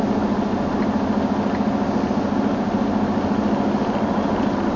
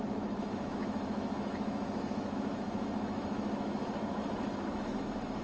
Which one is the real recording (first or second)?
first